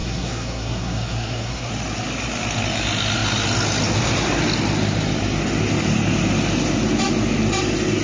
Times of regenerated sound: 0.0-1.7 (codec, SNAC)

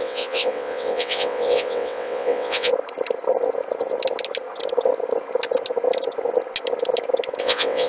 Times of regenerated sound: 0.0-2.7 (vocoder, WaveNeXt); 7.4-7.9